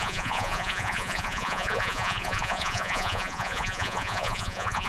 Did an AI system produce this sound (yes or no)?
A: yes